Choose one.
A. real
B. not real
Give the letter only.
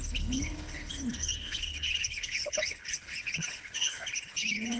B